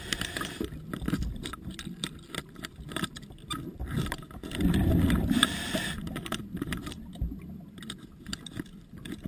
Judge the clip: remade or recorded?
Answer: recorded